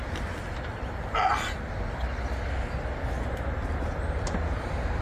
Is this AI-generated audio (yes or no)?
no